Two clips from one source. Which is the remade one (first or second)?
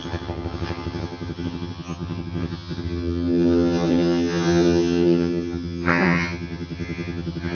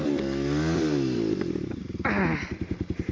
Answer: first